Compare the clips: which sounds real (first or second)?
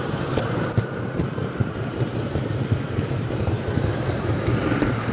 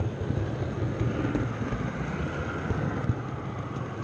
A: second